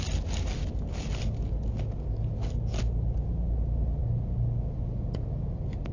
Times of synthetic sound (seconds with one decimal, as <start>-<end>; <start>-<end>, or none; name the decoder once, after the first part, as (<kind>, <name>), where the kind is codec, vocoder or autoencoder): none